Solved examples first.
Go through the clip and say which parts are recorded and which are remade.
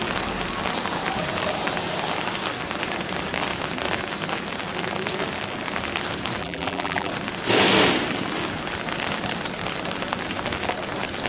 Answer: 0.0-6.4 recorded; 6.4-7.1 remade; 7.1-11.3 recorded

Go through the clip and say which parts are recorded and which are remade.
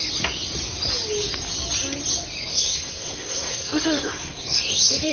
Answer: 0.0-2.5 recorded; 2.5-5.1 remade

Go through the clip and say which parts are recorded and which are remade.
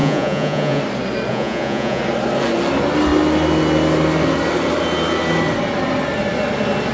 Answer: 0.0-0.8 remade; 0.8-1.3 recorded; 1.3-2.0 remade; 2.0-6.9 recorded